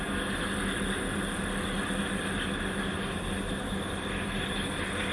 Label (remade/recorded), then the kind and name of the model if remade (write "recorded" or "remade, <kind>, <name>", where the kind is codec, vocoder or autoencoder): recorded